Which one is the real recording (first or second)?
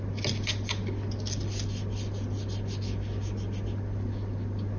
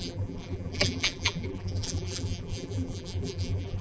first